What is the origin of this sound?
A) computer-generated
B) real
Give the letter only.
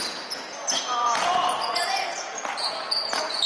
A